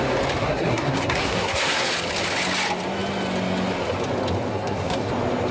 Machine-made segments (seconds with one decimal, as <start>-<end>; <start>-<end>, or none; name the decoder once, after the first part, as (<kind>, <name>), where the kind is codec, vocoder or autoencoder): 0.4-1.9 (codec, SNAC); 4.5-5.1